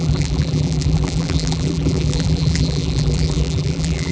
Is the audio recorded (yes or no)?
no